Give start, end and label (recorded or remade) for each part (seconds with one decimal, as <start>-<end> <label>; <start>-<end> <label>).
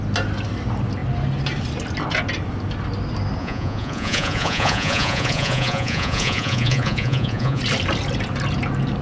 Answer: 0.0-3.4 recorded; 3.4-7.6 remade; 7.6-9.0 recorded